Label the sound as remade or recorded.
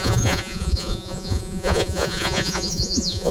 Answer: remade